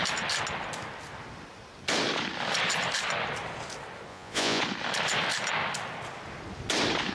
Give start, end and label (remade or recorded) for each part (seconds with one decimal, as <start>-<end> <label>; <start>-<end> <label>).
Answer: 0.0-4.1 recorded; 4.1-4.6 remade; 4.6-7.1 recorded